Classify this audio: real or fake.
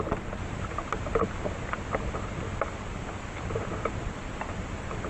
real